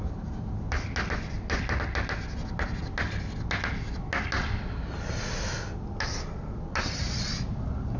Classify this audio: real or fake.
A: real